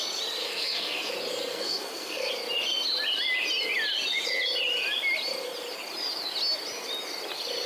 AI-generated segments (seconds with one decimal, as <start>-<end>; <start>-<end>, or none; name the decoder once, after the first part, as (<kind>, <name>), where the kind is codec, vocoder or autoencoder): 0.4-1.1 (codec, SNAC); 1.5-2.3